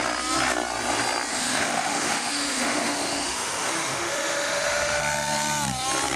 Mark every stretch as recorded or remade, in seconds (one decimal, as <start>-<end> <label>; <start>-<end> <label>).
0.0-1.3 recorded; 1.3-5.0 remade; 5.0-6.2 recorded